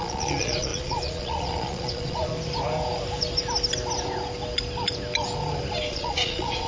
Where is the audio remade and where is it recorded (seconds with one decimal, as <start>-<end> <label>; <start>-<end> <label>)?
0.0-2.3 remade; 2.3-5.9 recorded; 5.9-6.7 remade